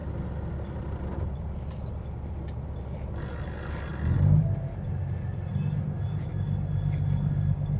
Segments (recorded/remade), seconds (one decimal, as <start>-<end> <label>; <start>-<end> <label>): 0.0-7.8 recorded

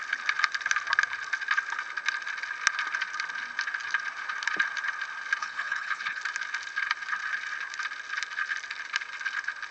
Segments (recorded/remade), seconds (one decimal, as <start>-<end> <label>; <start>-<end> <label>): 0.0-5.4 recorded; 5.4-6.2 remade; 6.2-9.7 recorded

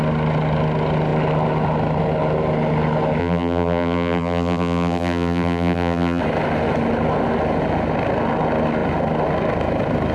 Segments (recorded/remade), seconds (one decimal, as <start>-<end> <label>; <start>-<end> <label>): 0.0-3.2 recorded; 3.2-6.2 remade; 6.2-10.1 recorded

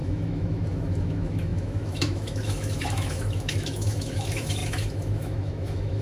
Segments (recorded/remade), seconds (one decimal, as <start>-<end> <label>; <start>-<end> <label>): 0.0-6.0 remade

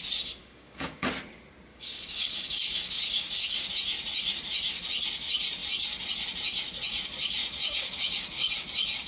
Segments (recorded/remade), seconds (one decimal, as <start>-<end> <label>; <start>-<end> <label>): 0.0-0.4 recorded; 0.4-1.1 remade; 1.1-1.7 recorded; 1.7-3.7 remade; 3.7-7.4 recorded; 7.4-8.5 remade; 8.5-9.1 recorded

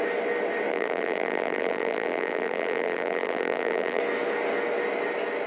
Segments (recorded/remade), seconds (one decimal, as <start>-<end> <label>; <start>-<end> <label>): 0.0-0.7 recorded; 0.7-4.0 remade; 4.0-5.5 recorded

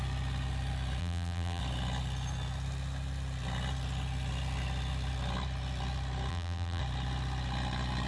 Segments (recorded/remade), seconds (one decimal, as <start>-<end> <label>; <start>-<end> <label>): 0.0-1.0 recorded; 1.0-1.6 remade; 1.6-6.3 recorded; 6.3-6.8 remade; 6.8-8.1 recorded

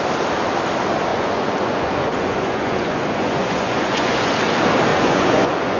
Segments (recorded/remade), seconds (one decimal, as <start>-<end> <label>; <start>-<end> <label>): 0.0-1.1 recorded; 1.1-4.3 remade; 4.3-4.9 recorded; 4.9-5.8 remade